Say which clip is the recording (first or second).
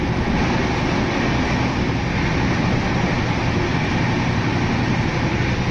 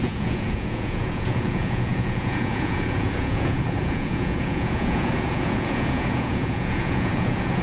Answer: first